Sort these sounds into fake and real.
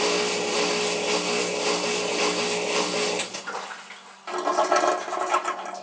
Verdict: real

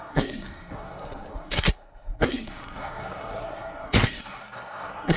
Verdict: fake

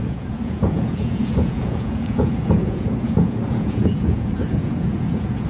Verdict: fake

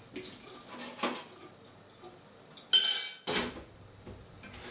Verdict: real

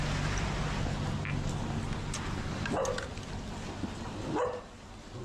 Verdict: real